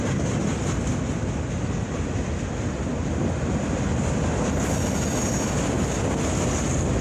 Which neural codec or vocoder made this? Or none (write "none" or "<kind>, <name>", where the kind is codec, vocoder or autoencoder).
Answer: none